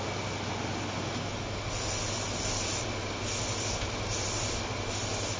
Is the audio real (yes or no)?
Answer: yes